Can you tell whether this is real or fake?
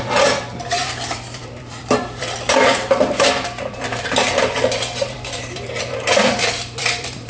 fake